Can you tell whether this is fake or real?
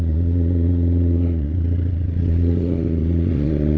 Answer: fake